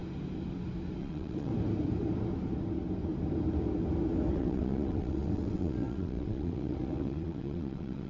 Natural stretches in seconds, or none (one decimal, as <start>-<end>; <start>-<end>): 0.0-1.0; 1.5-4.3